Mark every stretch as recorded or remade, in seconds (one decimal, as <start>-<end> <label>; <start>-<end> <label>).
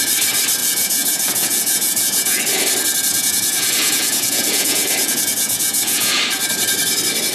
0.0-0.6 recorded; 0.6-2.4 remade; 2.4-3.1 recorded; 3.1-6.2 remade; 6.2-7.3 recorded